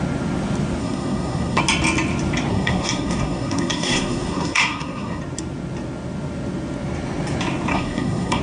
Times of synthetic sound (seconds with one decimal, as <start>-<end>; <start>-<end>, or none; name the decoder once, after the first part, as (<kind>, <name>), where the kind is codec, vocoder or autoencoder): 0.8-1.6 (codec, SNAC); 2.5-5.2; 7.7-8.4